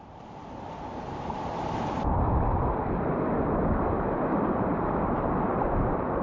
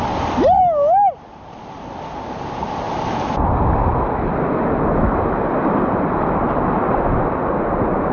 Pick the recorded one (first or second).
second